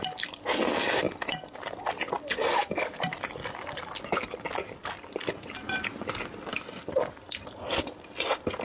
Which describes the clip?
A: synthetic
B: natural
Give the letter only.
B